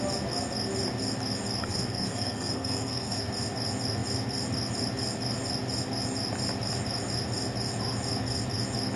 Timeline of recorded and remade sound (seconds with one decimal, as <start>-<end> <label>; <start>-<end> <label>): 0.0-1.6 recorded; 1.6-3.2 remade; 3.2-9.0 recorded